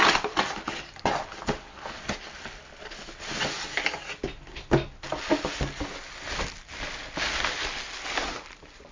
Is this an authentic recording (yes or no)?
yes